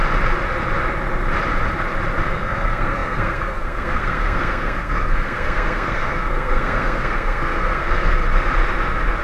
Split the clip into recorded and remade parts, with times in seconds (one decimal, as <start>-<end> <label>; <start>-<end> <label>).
0.0-2.2 recorded; 2.2-8.2 remade; 8.2-9.2 recorded